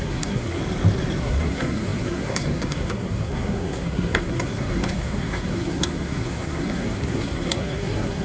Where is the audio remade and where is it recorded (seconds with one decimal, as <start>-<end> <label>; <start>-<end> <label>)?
0.0-0.6 remade; 0.6-1.2 recorded; 1.2-8.2 remade